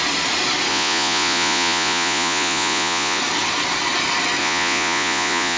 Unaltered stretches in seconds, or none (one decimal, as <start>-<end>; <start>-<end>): 0.0-0.7; 3.2-4.4